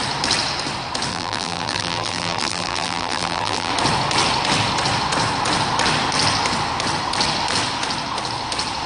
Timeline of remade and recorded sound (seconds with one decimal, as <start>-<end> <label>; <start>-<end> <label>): 0.0-1.1 recorded; 1.1-3.7 remade; 3.7-8.9 recorded